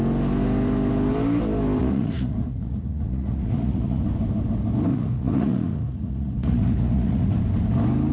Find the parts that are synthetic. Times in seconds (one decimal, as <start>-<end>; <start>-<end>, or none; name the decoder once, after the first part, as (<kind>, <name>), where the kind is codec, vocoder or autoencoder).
1.8-4.0 (vocoder, Vocos); 4.9-7.3